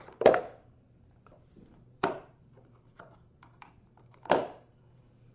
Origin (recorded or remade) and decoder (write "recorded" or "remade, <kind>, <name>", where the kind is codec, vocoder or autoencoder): remade, vocoder, BigVGAN v2